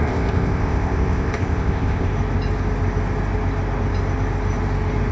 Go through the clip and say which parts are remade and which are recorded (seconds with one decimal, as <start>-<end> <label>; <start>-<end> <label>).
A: 0.0-2.1 remade; 2.1-5.1 recorded

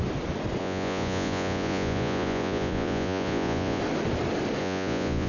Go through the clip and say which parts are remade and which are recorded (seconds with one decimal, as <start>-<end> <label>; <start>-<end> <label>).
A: 0.0-0.6 recorded; 0.6-3.8 remade; 3.8-4.6 recorded; 4.6-5.3 remade